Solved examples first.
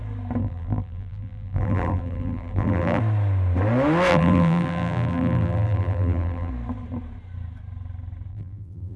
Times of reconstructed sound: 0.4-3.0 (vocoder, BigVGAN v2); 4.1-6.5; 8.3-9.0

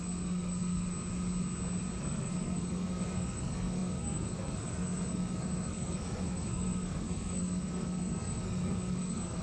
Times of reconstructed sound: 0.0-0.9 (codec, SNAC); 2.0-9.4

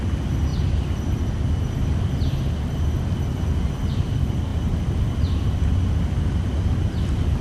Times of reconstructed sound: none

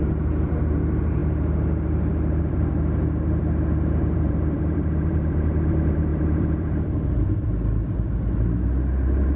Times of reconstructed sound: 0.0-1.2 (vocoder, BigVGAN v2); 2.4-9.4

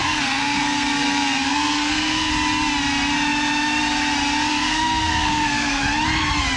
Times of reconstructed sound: 0.0-2.3 (codec, SNAC); 4.5-5.8